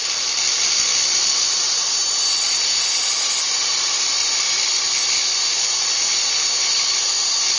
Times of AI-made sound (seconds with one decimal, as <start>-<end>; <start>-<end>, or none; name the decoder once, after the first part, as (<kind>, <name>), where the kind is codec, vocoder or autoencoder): none

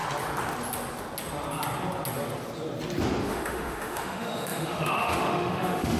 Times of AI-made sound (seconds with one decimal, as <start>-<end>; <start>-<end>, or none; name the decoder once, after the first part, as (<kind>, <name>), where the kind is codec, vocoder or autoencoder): 3.2-6.0 (autoencoder, DAC-VAE)

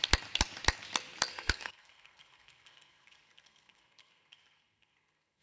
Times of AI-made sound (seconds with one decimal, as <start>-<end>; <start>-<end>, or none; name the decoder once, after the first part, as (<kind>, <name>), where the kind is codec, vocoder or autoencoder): 1.3-5.4 (codec, SNAC)

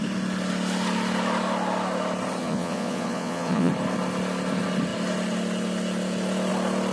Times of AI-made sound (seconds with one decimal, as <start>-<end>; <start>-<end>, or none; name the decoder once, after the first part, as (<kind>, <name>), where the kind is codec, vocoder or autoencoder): 2.4-3.7 (vocoder, Vocos)

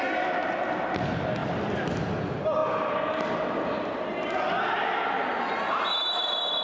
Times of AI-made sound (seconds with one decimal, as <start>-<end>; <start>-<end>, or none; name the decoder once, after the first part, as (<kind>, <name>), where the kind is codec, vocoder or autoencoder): none